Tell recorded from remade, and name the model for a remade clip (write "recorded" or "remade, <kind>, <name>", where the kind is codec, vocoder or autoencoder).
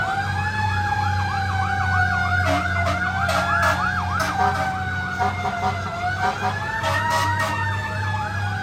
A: recorded